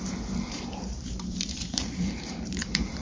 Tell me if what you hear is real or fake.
fake